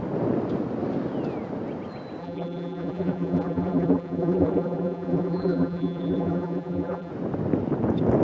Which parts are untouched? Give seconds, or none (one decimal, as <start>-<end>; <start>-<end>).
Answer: 0.0-2.2; 7.1-8.2